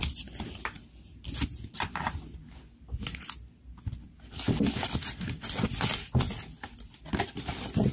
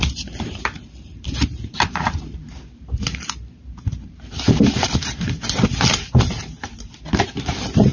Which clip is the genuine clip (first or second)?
first